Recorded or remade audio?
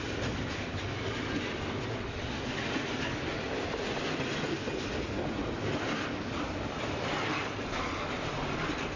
recorded